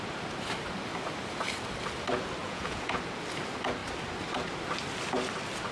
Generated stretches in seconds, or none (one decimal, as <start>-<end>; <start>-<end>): 2.4-3.0